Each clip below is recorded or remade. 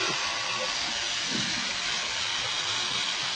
recorded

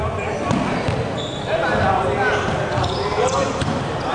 recorded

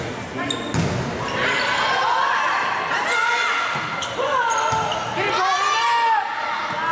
recorded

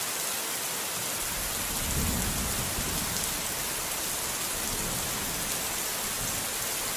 recorded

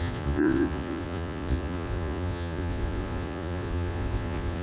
remade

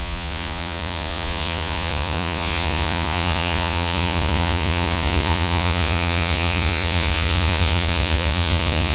remade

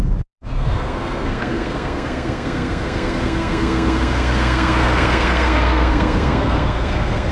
remade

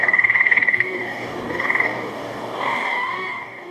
remade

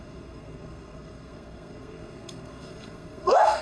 remade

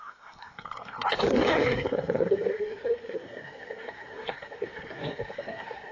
remade